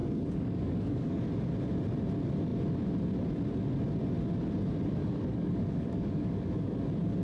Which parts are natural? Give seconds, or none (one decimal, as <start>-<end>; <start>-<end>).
1.2-5.0; 6.8-7.2